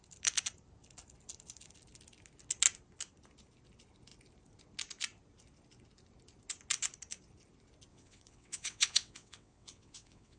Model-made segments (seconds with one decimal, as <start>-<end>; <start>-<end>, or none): 7.9-10.4